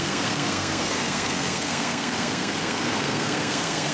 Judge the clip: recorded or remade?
remade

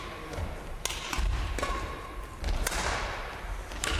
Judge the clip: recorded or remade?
recorded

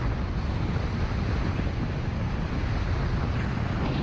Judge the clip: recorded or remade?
recorded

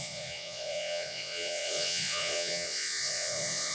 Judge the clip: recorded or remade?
remade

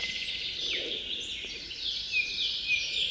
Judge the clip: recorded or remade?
remade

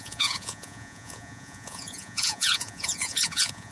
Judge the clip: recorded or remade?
remade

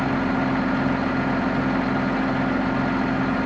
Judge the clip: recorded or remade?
recorded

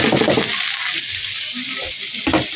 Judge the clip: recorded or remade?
recorded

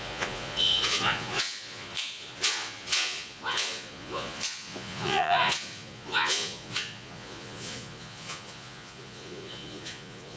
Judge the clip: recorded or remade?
remade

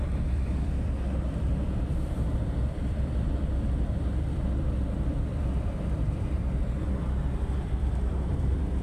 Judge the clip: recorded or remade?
remade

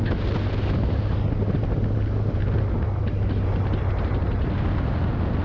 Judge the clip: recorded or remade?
recorded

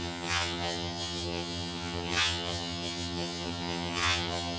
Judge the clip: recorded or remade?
remade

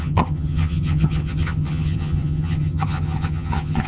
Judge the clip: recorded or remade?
remade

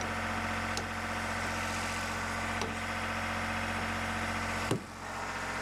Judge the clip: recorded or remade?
recorded